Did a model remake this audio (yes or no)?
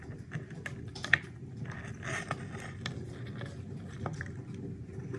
no